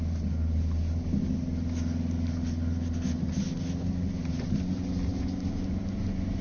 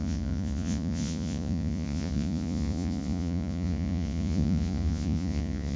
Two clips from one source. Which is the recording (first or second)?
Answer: first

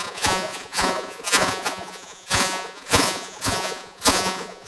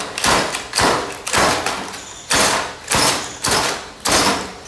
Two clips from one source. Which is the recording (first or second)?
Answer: second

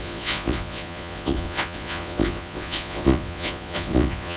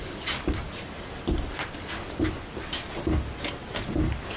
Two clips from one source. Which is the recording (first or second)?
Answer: second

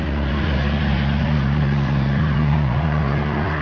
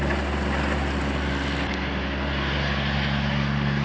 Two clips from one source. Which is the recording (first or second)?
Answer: second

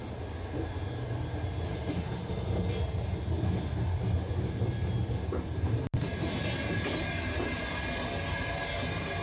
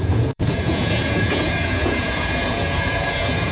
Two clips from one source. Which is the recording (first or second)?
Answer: first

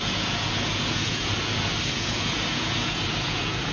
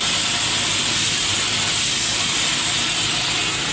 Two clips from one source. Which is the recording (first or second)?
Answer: second